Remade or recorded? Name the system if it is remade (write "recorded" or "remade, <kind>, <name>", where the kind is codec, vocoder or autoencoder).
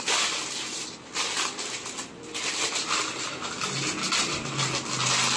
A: recorded